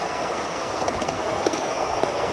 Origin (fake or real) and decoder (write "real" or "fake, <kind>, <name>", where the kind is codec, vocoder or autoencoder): fake, codec, SNAC